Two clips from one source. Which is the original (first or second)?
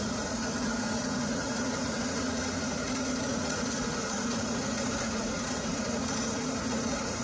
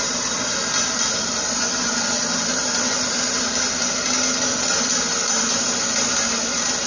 second